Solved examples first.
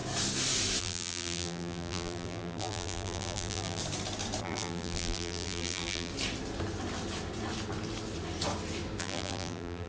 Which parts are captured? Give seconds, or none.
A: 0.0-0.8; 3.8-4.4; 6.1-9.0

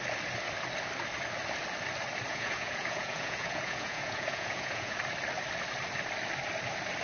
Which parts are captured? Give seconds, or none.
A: 0.0-2.3; 5.0-7.0